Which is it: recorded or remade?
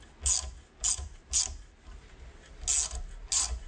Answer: recorded